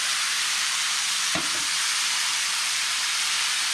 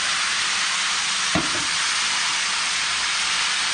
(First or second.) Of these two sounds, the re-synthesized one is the first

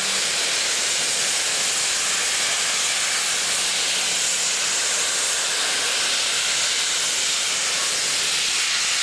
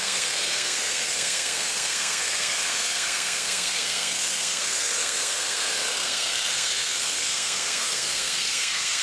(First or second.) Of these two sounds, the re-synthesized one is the second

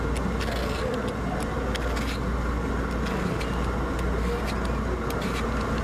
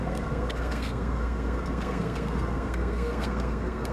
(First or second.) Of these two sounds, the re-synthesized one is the second